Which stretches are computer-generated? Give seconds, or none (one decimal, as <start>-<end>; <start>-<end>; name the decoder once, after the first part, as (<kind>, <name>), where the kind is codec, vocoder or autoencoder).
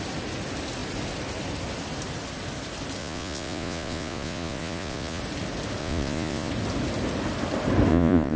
3.0-5.2 (vocoder, Vocos); 5.8-6.5; 7.9-8.4